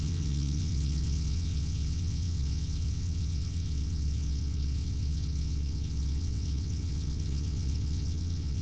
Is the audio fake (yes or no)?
yes